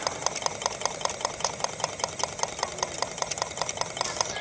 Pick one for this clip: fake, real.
real